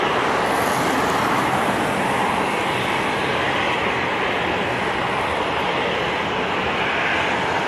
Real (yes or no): yes